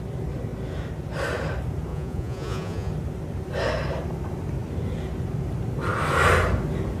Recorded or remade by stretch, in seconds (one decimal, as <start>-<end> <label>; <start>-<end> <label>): 0.0-1.9 recorded; 1.9-2.9 remade; 2.9-7.0 recorded